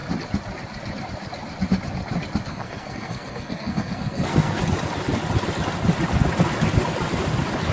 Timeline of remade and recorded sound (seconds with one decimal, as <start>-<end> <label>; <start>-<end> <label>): 0.0-2.5 recorded; 2.5-4.6 remade; 4.6-7.7 recorded